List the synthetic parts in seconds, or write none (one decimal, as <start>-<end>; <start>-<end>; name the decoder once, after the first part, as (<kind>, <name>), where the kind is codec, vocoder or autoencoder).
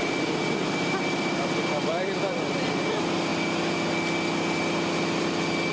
0.0-3.3 (vocoder, BigVGAN v2)